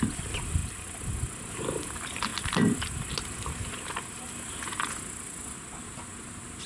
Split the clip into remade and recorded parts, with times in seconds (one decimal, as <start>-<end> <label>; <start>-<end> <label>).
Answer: 0.0-6.7 recorded